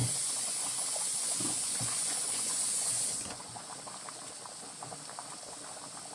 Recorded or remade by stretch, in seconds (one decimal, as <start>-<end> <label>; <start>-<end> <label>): 0.0-3.7 remade; 3.7-6.1 recorded